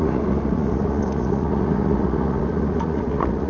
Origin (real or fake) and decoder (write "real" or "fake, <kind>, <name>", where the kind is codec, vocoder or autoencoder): fake, vocoder, Vocos